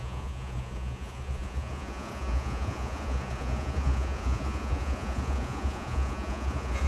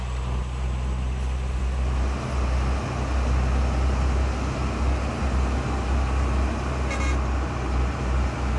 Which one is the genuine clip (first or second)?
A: second